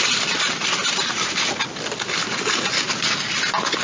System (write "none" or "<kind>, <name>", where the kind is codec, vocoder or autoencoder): none